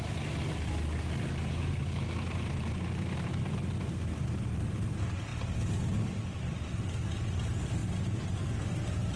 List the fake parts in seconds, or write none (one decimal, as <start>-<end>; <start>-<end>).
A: 1.5-3.4; 7.8-8.3